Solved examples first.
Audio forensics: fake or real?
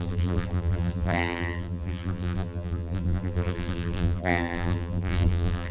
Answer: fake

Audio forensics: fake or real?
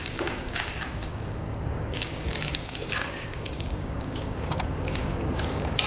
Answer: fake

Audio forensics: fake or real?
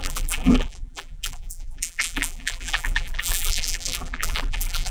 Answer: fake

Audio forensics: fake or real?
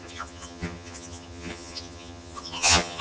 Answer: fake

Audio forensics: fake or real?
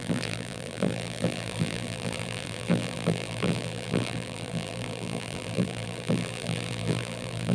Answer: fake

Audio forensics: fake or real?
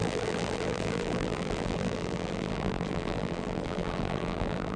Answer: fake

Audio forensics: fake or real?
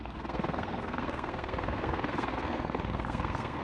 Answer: fake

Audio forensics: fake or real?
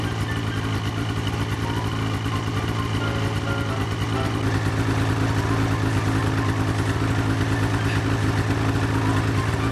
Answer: real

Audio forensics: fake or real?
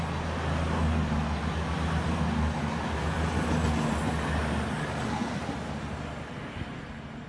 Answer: real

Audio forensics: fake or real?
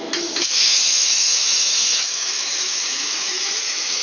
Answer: fake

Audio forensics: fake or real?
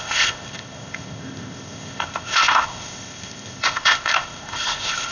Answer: fake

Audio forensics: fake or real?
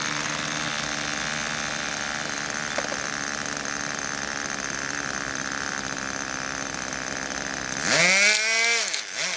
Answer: real